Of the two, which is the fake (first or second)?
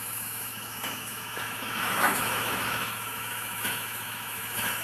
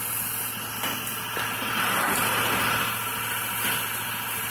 first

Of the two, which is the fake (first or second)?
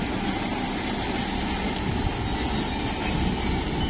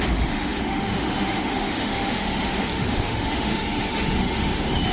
second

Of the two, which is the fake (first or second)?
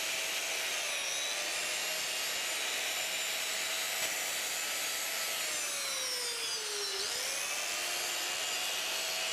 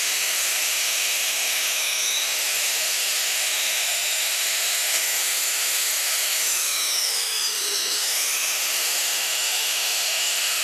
second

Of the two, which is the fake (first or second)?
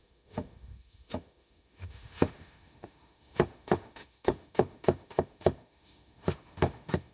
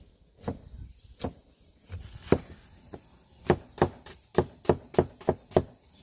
first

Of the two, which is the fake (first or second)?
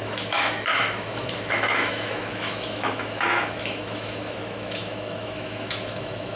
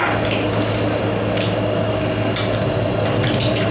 first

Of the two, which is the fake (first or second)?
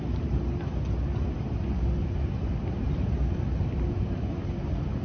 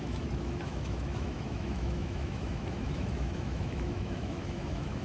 second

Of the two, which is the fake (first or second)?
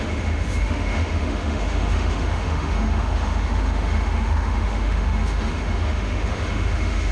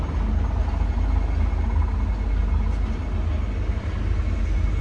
first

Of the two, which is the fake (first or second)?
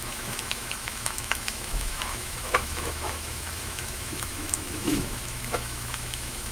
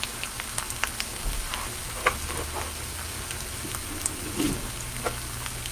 first